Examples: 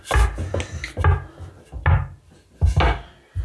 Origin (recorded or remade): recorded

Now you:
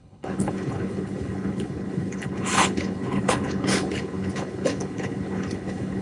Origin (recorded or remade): remade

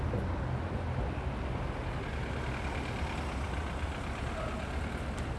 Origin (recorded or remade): recorded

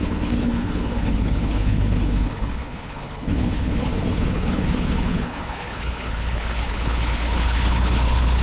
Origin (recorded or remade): remade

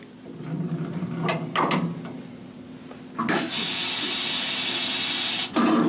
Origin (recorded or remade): recorded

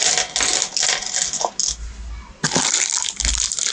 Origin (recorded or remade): recorded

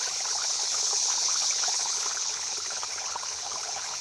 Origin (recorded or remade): remade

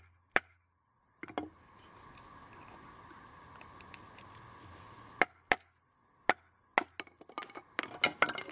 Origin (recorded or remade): recorded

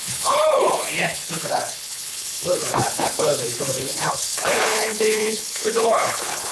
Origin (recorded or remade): remade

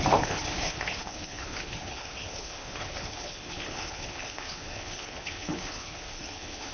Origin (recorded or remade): remade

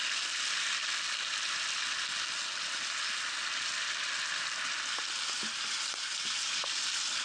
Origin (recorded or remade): recorded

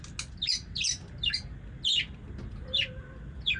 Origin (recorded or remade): recorded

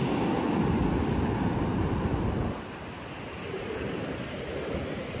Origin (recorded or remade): recorded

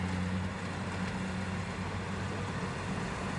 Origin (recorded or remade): recorded